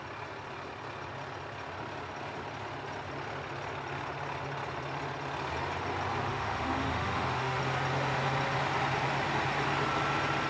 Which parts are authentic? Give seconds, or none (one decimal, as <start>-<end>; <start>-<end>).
0.0-6.3; 7.6-10.5